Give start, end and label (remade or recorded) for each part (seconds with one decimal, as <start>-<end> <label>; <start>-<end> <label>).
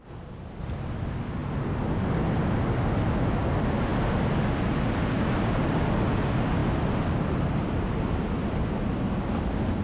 0.0-9.8 recorded